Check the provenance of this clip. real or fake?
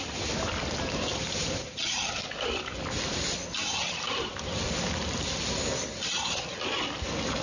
real